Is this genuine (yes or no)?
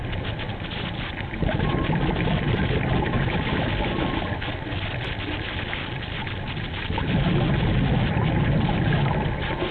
yes